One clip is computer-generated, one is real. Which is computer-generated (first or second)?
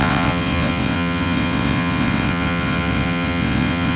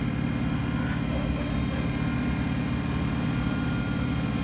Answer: first